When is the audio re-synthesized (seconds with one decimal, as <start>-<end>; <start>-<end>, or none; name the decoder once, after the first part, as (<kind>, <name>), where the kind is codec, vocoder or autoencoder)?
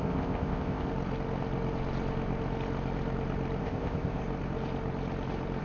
0.0-0.9 (codec, ZipCodec); 3.6-4.2